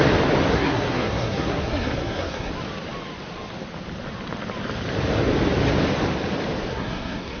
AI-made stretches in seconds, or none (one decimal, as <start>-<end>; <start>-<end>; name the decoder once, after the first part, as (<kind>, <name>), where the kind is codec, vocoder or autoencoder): 0.5-2.5 (codec, SNAC); 6.7-7.4